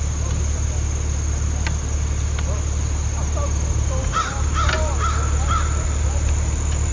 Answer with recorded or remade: recorded